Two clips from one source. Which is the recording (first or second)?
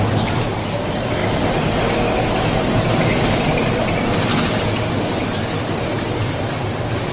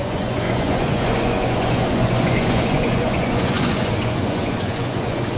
first